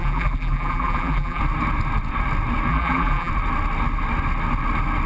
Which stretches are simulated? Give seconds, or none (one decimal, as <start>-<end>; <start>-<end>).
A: 0.0-1.4; 2.7-3.3